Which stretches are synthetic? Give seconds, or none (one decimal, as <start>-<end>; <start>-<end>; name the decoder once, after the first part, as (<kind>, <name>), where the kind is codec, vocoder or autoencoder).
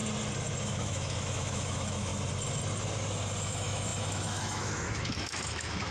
0.6-2.1 (autoencoder, DAC-VAE); 3.4-5.9